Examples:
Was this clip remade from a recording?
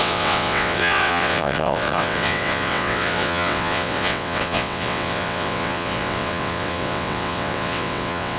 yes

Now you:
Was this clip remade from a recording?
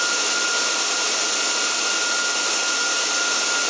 no